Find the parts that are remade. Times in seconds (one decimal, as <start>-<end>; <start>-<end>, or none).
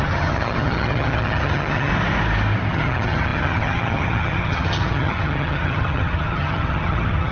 0.0-1.9; 2.7-7.3